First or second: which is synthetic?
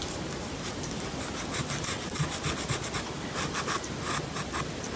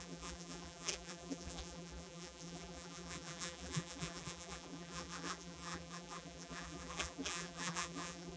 second